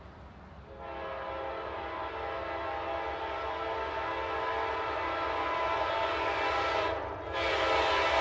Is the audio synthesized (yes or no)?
no